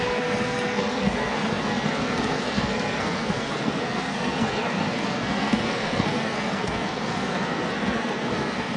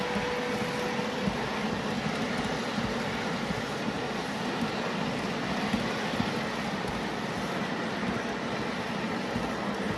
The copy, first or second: first